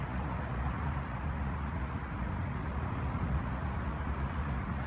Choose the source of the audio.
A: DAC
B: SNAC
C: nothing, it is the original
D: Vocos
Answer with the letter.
D